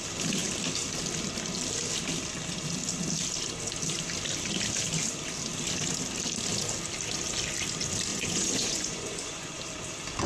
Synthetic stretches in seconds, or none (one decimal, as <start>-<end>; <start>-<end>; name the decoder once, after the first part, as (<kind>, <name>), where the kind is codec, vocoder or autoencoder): 8.1-9.6 (vocoder, Vocos)

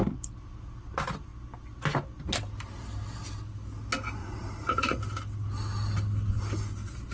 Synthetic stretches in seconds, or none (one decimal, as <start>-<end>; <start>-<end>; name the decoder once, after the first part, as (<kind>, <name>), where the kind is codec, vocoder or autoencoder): 4.2-5.0 (vocoder, Vocos)

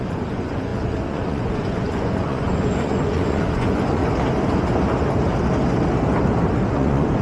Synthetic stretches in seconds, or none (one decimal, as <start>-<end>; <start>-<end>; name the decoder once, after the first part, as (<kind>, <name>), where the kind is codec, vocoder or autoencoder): 0.0-4.0 (vocoder, Vocos); 6.7-7.2

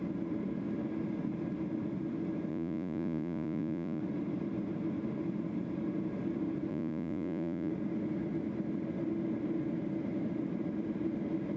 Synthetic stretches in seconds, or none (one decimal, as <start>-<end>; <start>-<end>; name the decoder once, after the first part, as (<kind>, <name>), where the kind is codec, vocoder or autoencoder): 2.5-4.0 (vocoder, Vocos); 6.7-7.7

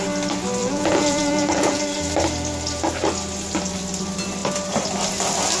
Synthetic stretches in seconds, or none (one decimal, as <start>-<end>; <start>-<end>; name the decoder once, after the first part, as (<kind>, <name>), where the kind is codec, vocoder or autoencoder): 0.6-1.8 (vocoder, Vocos)